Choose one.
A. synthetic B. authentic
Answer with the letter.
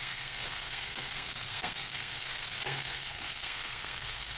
A